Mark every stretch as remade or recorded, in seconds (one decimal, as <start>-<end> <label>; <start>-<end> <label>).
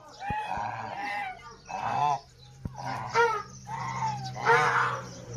0.0-1.0 recorded; 1.0-4.2 remade; 4.2-5.4 recorded